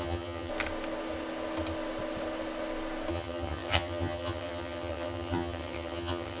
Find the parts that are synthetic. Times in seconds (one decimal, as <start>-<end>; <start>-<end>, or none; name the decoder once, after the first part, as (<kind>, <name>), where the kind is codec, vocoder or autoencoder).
0.0-0.5 (vocoder, HiFi-GAN); 3.1-6.4